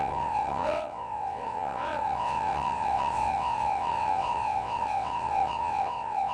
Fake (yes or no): yes